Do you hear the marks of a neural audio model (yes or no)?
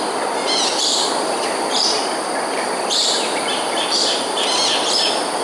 yes